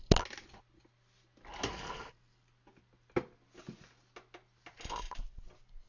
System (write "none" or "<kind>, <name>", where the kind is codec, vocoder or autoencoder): none